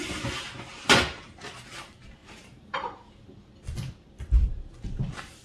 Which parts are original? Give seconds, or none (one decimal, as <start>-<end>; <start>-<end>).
0.0-2.2; 3.4-5.4